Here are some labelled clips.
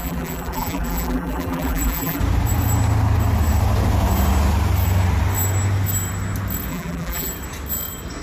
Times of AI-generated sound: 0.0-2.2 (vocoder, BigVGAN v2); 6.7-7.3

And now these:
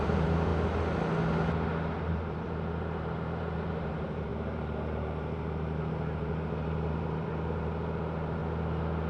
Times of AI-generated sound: 0.0-0.5 (vocoder, BigVGAN v2); 2.1-8.4

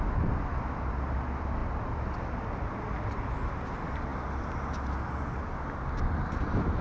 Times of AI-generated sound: none

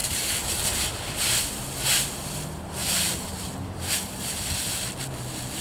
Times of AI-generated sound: 0.0-0.5 (vocoder, BigVGAN v2); 2.8-3.9

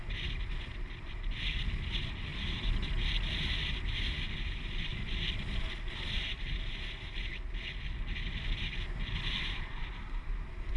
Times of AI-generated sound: 2.3-2.9 (vocoder, BigVGAN v2); 4.9-7.3

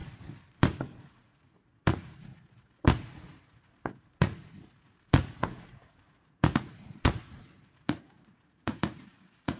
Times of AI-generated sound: 1.0-9.6 (vocoder, Vocos)

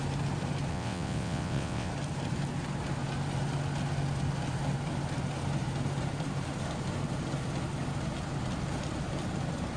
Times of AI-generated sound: 0.7-1.9 (vocoder, WaveNeXt)

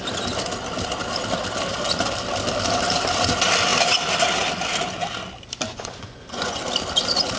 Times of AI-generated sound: 5.7-6.6 (vocoder, Vocos)